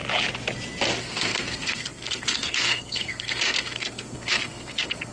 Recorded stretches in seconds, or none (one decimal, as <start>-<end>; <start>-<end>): 0.0-1.0

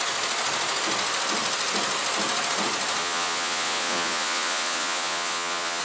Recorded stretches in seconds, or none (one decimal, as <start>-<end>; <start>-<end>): 0.0-3.0

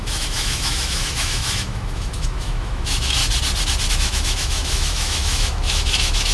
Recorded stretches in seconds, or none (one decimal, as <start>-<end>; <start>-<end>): 3.2-3.9

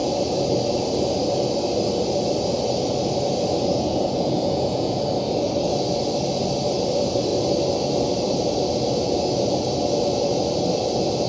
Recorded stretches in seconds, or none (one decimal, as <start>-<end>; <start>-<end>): 0.0-3.7; 5.0-11.3

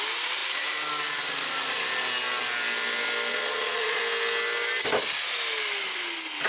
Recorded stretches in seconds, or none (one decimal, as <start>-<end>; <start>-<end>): 0.0-3.3; 4.0-6.5

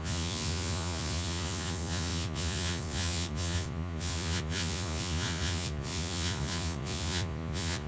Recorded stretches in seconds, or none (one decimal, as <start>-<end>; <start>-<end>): none

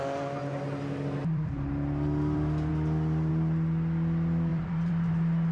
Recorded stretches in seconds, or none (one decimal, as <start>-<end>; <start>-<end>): 0.0-1.2; 1.7-2.7; 3.3-4.5; 5.1-5.5

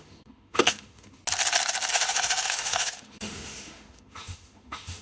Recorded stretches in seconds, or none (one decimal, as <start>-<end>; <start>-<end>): 1.2-1.9